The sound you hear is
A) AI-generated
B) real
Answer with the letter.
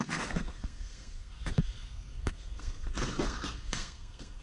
A